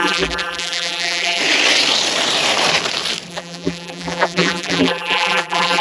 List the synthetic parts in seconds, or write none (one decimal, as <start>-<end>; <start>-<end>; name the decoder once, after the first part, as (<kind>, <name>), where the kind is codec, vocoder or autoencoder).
0.0-1.4 (vocoder, BigVGAN v2); 3.3-5.8